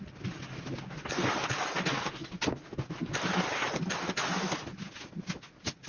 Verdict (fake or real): real